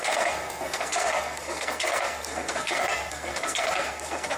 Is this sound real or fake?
fake